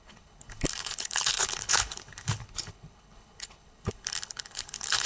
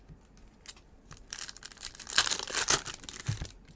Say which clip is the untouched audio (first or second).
second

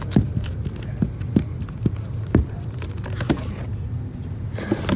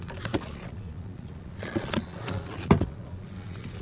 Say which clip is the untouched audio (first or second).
first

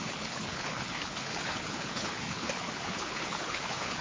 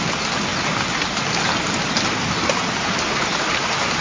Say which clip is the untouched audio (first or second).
second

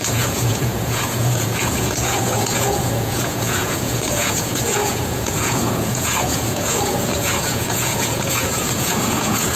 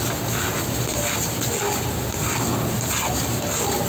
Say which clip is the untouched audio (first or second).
second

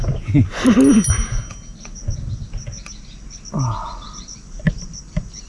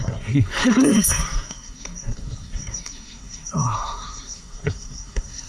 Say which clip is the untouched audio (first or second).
first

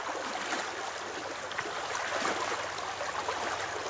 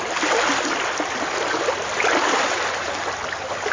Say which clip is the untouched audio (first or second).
second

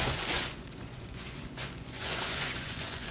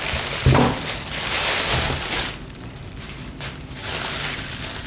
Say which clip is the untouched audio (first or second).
second